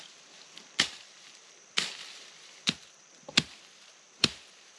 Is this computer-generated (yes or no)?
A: yes